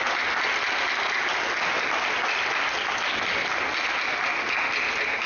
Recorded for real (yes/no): yes